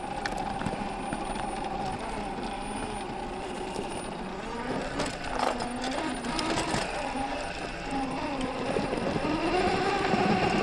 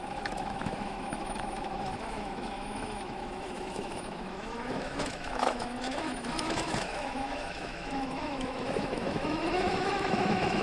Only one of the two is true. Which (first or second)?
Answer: first